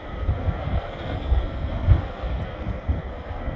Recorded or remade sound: remade